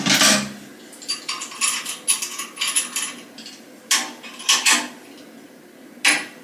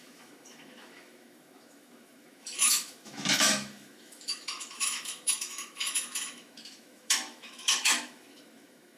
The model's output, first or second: second